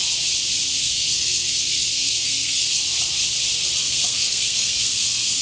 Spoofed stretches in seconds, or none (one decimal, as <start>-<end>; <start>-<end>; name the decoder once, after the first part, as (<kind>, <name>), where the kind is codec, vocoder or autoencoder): 0.8-2.8 (codec, SNAC); 3.8-5.4